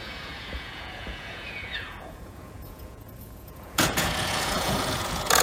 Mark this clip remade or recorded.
remade